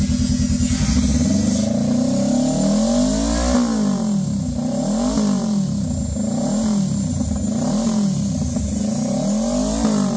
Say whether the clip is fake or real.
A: real